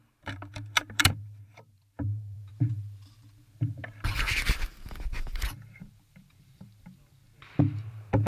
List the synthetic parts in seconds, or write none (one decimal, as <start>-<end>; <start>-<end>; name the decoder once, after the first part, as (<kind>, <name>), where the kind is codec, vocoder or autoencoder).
0.0-7.2 (vocoder, BigVGAN v2); 7.9-8.3